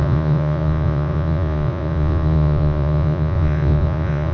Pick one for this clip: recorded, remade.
remade